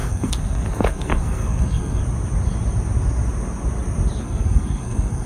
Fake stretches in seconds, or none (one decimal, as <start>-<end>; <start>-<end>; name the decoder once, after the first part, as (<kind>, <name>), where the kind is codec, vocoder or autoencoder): 0.0-2.0 (codec, SNAC); 4.2-5.3